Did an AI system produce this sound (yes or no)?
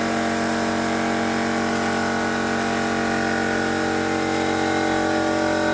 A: no